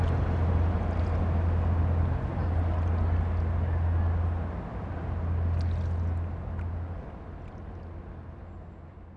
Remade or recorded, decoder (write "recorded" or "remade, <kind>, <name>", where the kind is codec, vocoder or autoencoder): recorded